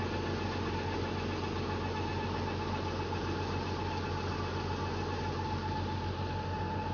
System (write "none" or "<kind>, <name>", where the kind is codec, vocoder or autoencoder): none